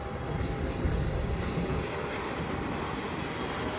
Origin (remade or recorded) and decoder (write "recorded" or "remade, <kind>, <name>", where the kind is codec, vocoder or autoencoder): recorded